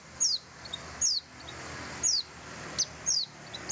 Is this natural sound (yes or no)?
yes